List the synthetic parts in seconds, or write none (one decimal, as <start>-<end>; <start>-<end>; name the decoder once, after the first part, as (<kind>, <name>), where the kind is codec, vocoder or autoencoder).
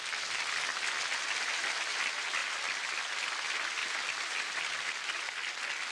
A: 2.4-3.0 (vocoder, BigVGAN v2); 3.8-5.2